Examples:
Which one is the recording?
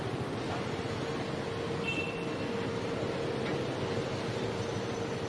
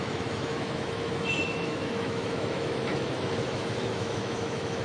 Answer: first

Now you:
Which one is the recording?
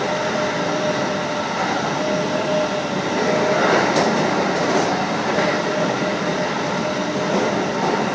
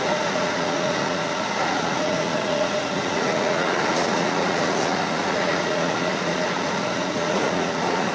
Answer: first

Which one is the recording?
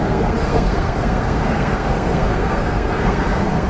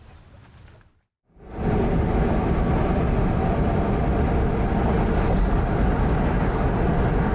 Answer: second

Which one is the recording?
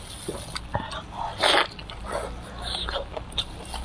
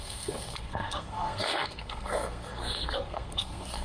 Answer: first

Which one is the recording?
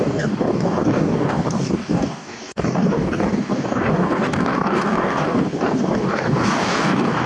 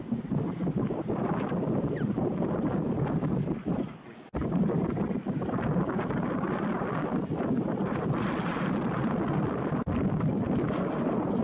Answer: second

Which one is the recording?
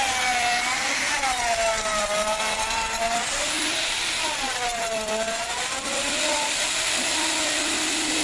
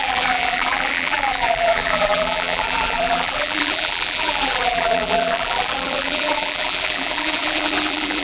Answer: first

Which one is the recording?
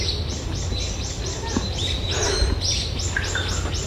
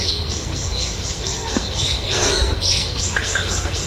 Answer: first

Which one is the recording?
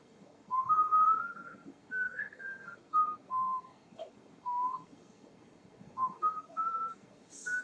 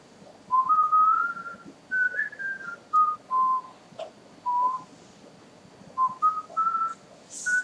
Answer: second